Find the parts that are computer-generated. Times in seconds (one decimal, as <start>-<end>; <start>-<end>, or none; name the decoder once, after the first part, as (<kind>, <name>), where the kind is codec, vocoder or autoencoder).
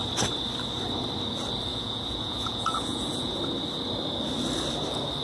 1.7-3.4 (vocoder, Vocos)